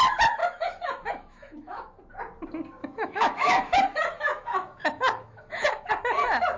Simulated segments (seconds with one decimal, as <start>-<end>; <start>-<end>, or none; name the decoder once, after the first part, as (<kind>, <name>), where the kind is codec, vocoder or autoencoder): 0.4-2.0 (autoencoder, DAC-VAE); 2.8-5.9